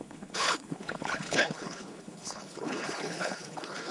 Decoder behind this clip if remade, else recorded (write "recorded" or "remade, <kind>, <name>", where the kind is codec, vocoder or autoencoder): remade, codec, HILCodec